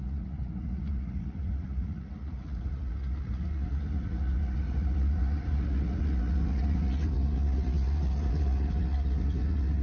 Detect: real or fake fake